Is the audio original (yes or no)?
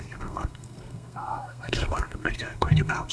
no